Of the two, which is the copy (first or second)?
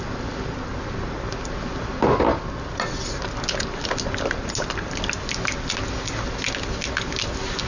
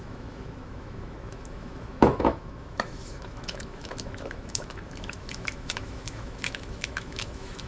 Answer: second